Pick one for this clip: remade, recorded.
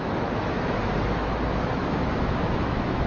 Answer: remade